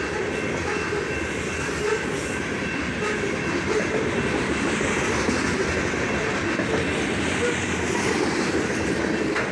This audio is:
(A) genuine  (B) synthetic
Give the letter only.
A